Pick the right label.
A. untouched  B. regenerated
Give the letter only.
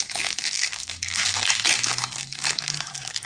B